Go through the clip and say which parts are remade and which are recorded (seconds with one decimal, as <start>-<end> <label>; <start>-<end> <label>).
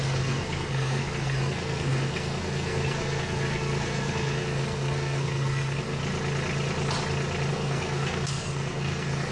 0.0-6.0 remade; 6.0-7.5 recorded; 7.5-9.3 remade